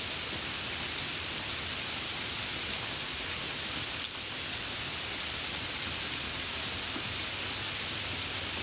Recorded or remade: recorded